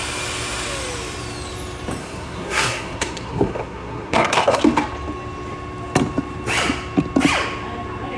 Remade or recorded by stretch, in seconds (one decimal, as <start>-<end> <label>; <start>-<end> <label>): 0.0-2.0 recorded; 2.0-4.6 remade; 4.6-8.2 recorded